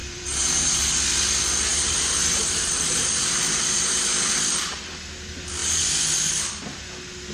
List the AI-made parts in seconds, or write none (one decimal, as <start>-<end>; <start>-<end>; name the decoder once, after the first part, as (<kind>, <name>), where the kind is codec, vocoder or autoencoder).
0.0-0.9 (vocoder, BigVGAN v2); 1.7-4.8; 5.6-6.6